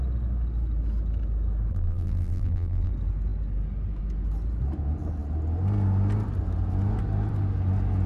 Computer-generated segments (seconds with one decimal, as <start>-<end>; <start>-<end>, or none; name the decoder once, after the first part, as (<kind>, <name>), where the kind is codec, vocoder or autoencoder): 1.7-2.9 (vocoder, BigVGAN v2)